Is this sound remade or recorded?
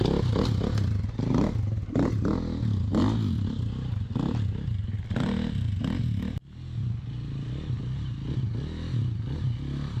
recorded